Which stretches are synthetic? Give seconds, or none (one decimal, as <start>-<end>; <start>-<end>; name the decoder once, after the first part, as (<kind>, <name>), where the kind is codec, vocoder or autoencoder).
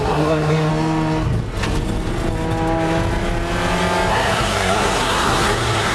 0.0-0.7 (codec, SNAC); 4.1-5.9